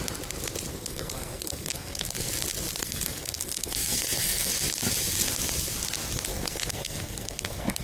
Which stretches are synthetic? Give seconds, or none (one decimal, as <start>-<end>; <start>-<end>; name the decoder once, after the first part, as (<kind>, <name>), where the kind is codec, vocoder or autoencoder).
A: 0.7-2.3 (codec, SNAC); 2.8-4.5; 6.3-7.8